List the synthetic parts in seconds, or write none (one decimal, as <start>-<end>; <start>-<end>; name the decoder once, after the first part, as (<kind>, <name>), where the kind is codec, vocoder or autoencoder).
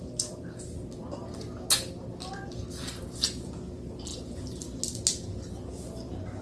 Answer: none